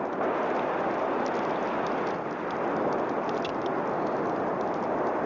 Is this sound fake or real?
real